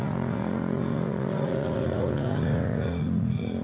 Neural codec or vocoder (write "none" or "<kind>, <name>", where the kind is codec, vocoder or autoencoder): vocoder, Vocos